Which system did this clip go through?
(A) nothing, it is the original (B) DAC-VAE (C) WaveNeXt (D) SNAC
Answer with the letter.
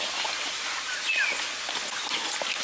A